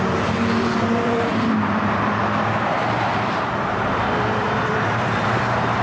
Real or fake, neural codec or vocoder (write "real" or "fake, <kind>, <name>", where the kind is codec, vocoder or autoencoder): fake, vocoder, BigVGAN v2